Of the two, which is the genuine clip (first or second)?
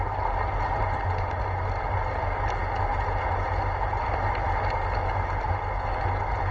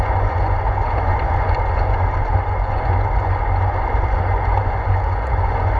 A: first